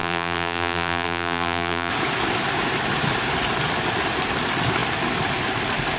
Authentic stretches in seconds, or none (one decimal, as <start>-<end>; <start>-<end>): 1.9-6.0